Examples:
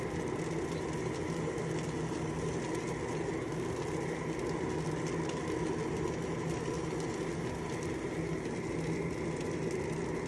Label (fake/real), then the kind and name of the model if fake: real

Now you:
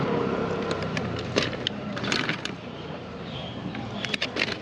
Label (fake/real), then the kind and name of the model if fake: fake, vocoder, BigVGAN v2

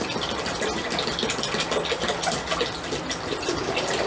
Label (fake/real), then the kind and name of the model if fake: real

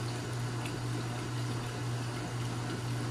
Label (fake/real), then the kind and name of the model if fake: real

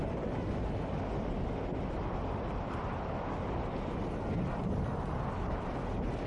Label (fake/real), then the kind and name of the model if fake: real